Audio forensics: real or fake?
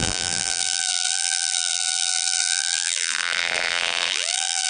fake